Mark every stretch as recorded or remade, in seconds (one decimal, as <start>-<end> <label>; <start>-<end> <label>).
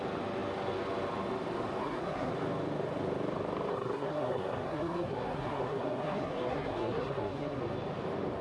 0.0-1.8 recorded; 1.8-2.3 remade; 2.3-3.7 recorded; 3.7-7.6 remade; 7.6-8.4 recorded